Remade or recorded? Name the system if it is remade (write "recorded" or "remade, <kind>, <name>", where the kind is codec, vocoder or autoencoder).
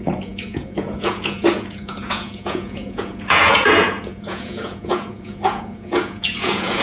remade, vocoder, Vocos